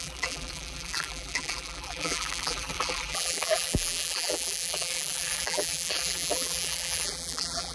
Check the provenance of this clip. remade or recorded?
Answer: remade